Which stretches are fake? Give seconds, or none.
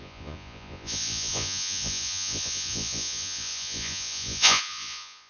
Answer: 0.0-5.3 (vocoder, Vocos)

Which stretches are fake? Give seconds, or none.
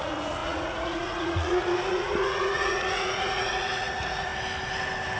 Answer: 0.0-4.3 (vocoder, Vocos)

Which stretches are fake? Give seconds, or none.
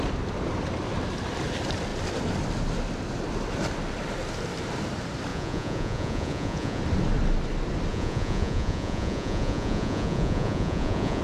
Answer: 5.3-6.8 (vocoder, Vocos); 7.9-11.2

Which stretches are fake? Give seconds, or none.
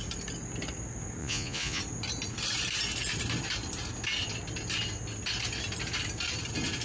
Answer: 1.2-1.8 (vocoder, Vocos)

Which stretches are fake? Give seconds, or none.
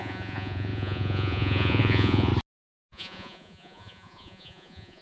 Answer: 0.0-2.3 (vocoder, Vocos); 2.9-5.0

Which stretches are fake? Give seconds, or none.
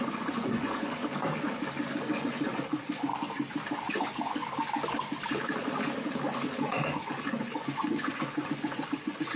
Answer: 0.0-1.0 (vocoder, Vocos); 2.0-3.1; 3.9-4.4; 6.6-9.4